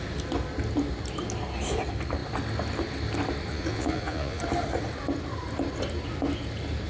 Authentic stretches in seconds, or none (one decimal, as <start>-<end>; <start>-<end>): 0.0-3.5; 4.4-6.9